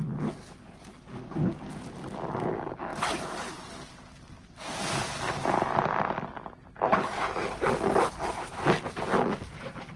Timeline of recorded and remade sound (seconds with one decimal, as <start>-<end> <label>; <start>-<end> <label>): 0.0-10.0 recorded